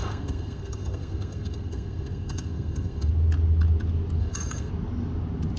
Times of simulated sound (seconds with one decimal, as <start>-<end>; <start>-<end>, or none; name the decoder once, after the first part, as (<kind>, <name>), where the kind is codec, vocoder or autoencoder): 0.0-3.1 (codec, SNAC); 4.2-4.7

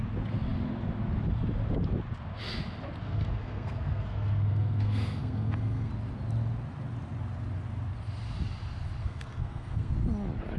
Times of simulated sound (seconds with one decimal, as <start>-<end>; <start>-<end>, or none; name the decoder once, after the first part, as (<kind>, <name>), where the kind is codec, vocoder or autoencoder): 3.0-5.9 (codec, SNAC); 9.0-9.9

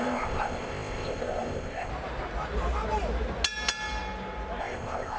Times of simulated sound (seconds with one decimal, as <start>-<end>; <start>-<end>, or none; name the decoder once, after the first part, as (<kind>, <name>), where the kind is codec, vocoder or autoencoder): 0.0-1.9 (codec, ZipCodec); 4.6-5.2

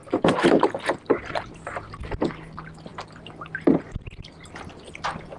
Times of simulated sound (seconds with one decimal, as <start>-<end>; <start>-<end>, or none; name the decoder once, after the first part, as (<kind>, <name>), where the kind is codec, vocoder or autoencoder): none

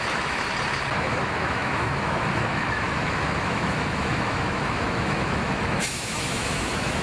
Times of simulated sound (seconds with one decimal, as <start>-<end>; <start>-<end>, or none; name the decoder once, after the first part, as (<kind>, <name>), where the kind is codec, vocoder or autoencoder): 0.0-0.5 (autoencoder, DAC-VAE); 1.0-7.0